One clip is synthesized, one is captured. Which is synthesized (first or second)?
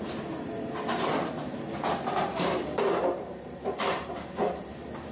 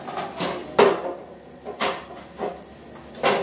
first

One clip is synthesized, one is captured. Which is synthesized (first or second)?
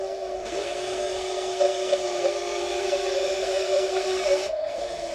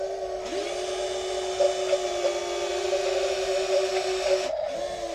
first